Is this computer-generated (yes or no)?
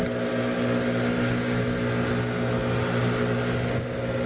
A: no